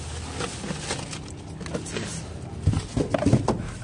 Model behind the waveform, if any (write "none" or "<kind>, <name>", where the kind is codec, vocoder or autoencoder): none